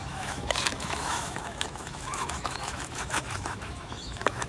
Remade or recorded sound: remade